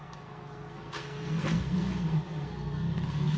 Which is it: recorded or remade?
remade